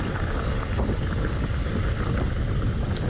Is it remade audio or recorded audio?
recorded